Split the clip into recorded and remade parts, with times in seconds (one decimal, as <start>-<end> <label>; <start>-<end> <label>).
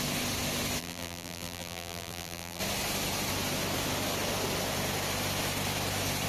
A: 0.0-0.8 recorded; 0.8-2.6 remade; 2.6-6.3 recorded